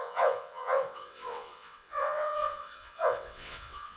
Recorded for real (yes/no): no